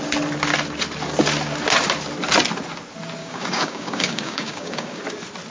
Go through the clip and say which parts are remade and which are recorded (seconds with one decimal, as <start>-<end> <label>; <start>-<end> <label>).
0.0-3.2 recorded; 3.2-5.0 remade; 5.0-5.5 recorded